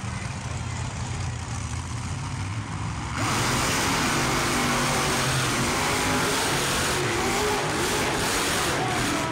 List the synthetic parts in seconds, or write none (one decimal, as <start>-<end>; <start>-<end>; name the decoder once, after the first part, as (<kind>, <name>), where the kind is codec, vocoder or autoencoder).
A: none